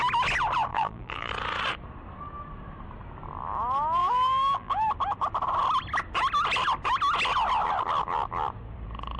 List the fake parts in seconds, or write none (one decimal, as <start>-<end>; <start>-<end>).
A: 0.7-1.3; 4.0-4.8